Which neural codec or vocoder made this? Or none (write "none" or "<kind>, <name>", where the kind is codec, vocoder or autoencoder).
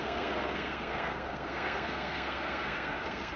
codec, SNAC